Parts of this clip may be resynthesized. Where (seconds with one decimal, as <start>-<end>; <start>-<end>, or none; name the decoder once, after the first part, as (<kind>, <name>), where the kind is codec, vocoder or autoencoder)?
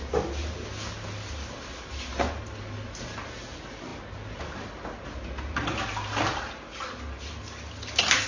none